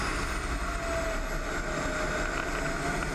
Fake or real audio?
real